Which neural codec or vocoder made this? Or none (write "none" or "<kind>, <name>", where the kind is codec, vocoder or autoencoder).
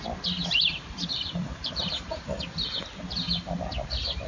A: none